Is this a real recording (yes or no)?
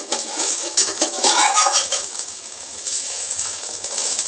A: no